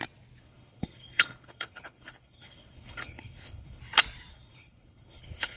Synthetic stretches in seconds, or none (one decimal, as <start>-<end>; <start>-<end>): 0.4-3.8; 4.3-5.6